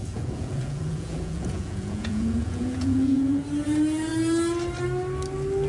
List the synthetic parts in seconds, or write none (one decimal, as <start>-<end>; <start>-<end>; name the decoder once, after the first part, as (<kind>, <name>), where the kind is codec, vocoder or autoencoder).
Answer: 0.0-3.4 (vocoder, Vocos)